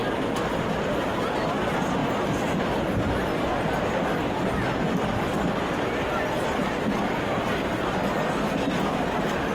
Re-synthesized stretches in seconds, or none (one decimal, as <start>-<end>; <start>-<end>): none